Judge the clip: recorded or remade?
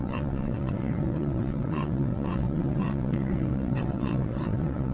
remade